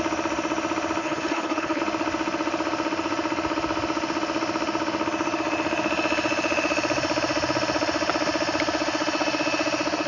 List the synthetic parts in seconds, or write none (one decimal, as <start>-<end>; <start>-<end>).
1.0-1.8